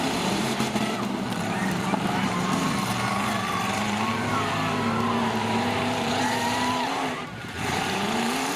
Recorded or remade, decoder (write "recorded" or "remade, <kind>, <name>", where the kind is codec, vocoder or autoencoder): remade, vocoder, BigVGAN v2